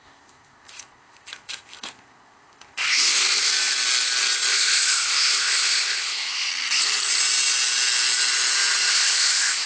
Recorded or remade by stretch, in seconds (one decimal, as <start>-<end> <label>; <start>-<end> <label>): 0.0-3.5 remade; 3.5-4.5 recorded; 4.5-6.5 remade; 6.5-8.9 recorded; 8.9-9.7 remade